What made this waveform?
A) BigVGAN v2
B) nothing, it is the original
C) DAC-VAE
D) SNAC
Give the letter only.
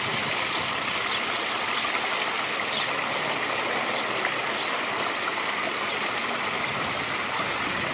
B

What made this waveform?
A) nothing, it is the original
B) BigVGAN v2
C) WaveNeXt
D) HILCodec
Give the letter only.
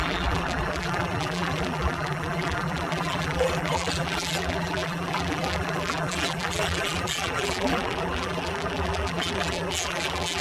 B